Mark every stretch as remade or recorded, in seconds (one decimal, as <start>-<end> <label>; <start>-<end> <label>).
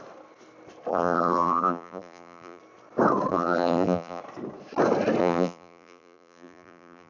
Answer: 0.0-0.9 recorded; 0.9-2.6 remade; 2.6-3.3 recorded; 3.3-4.2 remade; 4.2-5.2 recorded; 5.2-7.1 remade